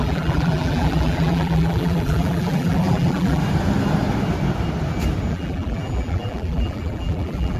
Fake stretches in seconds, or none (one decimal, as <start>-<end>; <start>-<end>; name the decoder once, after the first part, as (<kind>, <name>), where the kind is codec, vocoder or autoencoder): 0.0-3.4 (vocoder, BigVGAN v2); 5.3-7.6

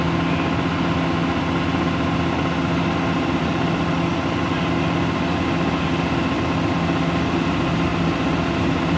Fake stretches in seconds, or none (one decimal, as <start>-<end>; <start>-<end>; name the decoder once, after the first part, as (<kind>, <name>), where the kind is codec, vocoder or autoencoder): none

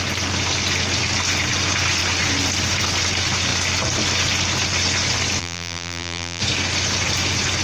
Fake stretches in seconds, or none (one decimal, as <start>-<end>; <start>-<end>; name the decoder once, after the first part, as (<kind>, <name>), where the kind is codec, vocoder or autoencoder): 5.4-6.4 (vocoder, BigVGAN v2)

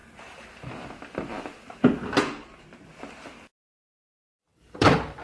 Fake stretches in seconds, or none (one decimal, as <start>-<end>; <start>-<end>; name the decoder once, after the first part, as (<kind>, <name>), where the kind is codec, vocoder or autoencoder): 0.0-1.8 (vocoder, BigVGAN v2); 4.5-5.2

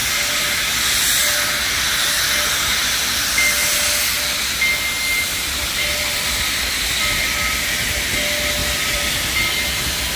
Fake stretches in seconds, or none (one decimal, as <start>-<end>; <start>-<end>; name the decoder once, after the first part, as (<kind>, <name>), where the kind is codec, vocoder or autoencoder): 0.0-2.2 (vocoder, BigVGAN v2); 5.3-6.6; 8.6-9.1

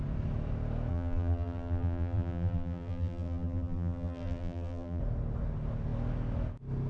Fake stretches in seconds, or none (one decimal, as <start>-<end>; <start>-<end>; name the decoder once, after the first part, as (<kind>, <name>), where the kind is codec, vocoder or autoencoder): 0.9-5.0 (vocoder, BigVGAN v2)